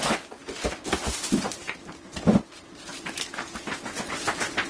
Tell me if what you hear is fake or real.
real